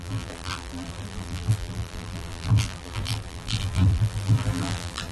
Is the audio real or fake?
fake